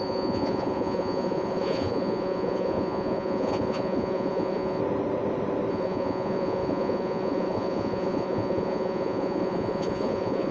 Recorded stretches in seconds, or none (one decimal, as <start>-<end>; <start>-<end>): 4.8-5.7